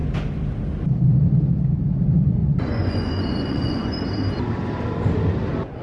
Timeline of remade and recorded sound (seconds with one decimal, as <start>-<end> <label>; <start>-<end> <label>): 0.0-2.4 recorded; 2.4-4.0 remade; 4.0-5.8 recorded